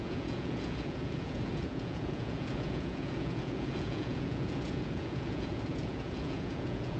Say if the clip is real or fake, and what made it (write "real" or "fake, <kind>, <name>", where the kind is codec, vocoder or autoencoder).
fake, vocoder, Vocos